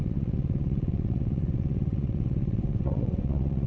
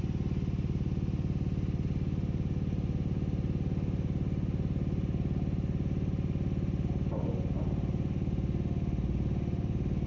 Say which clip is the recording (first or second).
second